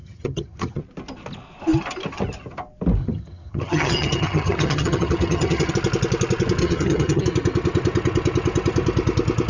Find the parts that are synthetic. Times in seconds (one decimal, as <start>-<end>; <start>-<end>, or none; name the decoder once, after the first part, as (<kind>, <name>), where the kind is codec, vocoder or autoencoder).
0.0-0.8 (vocoder, HiFi-GAN); 3.0-5.7; 6.6-7.2